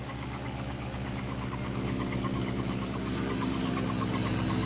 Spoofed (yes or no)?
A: yes